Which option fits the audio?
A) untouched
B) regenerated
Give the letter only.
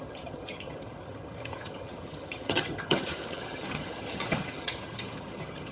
B